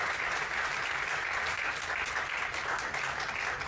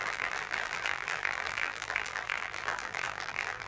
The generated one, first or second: second